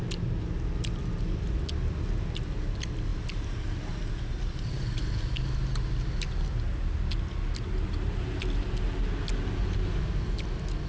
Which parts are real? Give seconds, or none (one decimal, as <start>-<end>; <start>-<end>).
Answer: 0.0-10.9